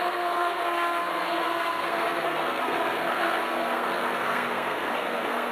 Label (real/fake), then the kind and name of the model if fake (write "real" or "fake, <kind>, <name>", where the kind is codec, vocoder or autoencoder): fake, codec, SNAC